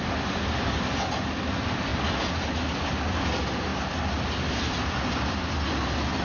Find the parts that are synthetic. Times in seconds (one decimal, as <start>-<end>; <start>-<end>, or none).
3.7-4.9